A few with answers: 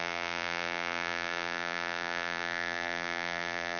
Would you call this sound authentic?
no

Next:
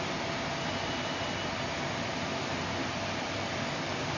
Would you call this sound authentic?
yes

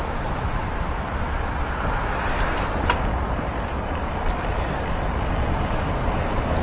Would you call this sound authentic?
yes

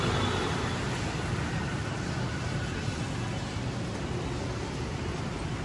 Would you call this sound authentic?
yes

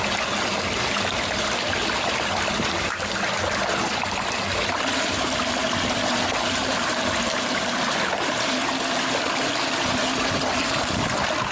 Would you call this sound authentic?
yes